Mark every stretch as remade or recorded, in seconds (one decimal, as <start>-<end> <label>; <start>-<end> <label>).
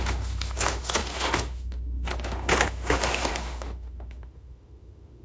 0.0-5.2 remade